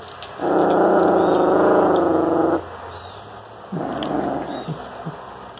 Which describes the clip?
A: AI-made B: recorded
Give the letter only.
B